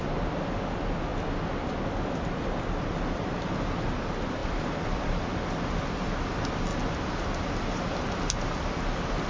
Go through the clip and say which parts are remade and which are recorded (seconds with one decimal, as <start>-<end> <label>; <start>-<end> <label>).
0.0-4.4 recorded; 4.4-5.2 remade; 5.2-9.3 recorded